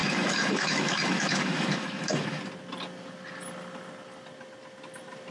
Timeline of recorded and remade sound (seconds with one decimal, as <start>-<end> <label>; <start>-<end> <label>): 0.0-2.4 remade; 2.4-5.3 recorded